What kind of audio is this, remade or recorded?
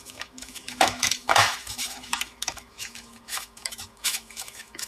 remade